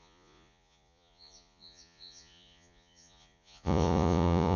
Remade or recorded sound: remade